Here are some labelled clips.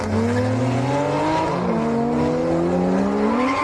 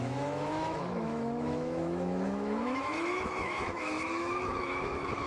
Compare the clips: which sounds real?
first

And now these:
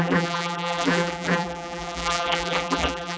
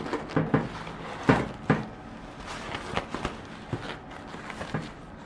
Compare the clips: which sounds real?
second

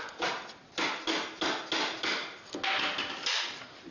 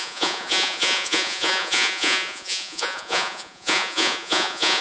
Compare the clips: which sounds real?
first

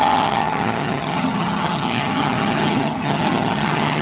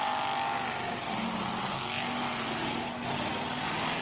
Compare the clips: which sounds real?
second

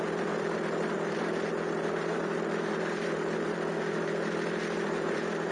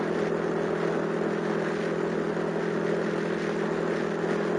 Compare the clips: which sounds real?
second